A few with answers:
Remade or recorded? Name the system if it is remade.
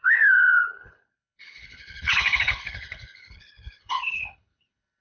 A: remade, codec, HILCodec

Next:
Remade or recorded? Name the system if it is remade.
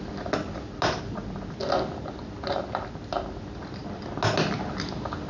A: recorded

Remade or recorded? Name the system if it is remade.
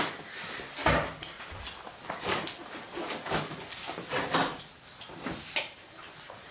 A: recorded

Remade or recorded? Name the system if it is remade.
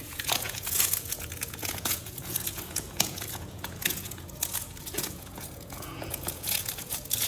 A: remade, vocoder, Vocos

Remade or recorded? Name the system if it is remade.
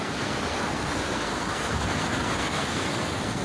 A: remade, codec, SNAC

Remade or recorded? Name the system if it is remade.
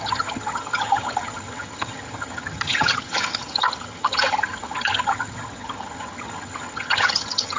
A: remade, vocoder, HiFi-GAN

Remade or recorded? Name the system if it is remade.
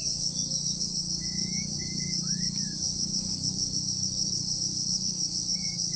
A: remade, codec, DAC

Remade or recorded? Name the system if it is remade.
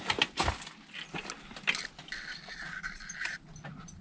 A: recorded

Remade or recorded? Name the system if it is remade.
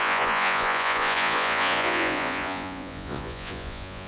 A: remade, vocoder, Vocos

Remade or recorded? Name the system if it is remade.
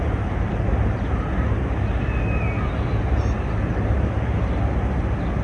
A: recorded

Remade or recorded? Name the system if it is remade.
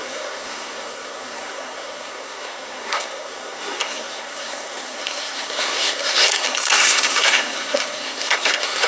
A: remade, codec, SNAC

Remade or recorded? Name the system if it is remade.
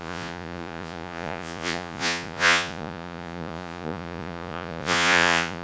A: remade, vocoder, Vocos